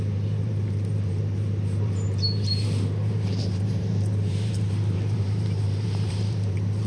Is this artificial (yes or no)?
yes